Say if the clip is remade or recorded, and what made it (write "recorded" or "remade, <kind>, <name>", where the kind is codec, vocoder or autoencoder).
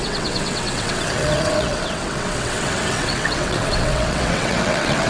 remade, vocoder, WaveNeXt